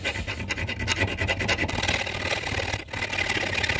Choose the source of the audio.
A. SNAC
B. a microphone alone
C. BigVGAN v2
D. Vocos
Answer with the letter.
B